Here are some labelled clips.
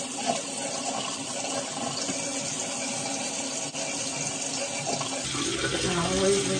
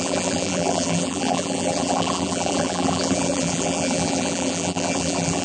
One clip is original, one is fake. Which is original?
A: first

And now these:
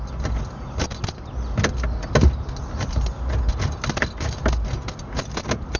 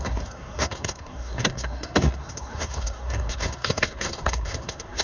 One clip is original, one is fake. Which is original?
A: first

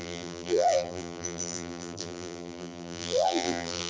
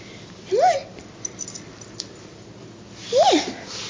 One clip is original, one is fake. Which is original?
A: second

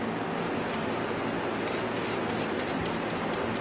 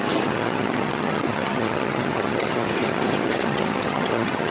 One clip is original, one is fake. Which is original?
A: first